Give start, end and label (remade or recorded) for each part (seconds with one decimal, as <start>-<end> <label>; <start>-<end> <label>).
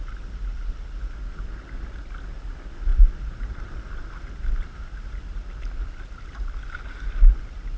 0.0-7.8 recorded